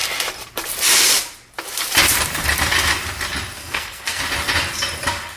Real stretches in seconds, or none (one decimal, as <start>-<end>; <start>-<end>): 0.0-3.6; 4.2-5.4